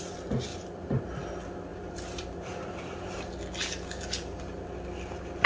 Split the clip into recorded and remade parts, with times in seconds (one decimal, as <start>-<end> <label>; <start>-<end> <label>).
0.0-0.5 recorded; 0.5-1.0 remade; 1.0-1.7 recorded; 1.7-3.3 remade; 3.3-5.5 recorded